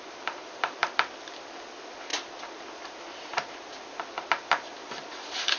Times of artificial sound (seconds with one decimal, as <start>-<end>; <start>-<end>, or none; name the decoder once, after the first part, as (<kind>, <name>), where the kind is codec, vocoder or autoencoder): none